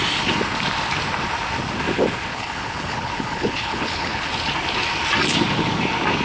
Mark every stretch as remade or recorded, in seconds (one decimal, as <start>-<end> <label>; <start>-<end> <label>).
0.0-2.3 recorded; 2.3-4.3 remade; 4.3-6.2 recorded

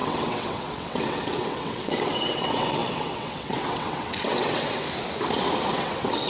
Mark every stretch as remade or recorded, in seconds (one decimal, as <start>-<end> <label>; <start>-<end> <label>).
0.0-4.8 remade; 4.8-5.7 recorded; 5.7-6.3 remade